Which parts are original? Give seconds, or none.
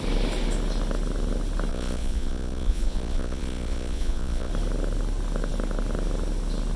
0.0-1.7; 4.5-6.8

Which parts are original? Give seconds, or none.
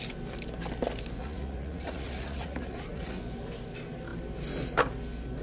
0.0-1.2; 3.2-5.4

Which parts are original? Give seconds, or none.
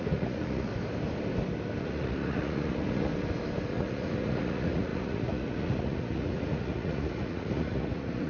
0.7-1.8; 3.1-3.7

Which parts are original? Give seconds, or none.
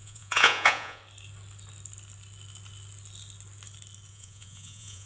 1.0-4.1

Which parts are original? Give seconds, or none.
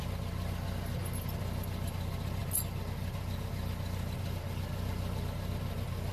0.0-6.1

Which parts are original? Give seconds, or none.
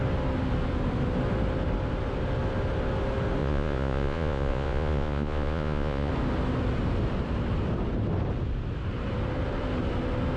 0.0-3.4; 6.1-10.4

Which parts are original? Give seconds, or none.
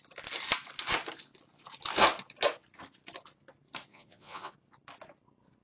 0.0-3.9; 4.5-5.6